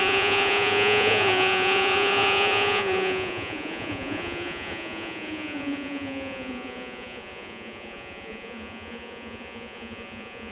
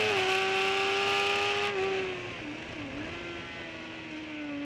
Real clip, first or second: second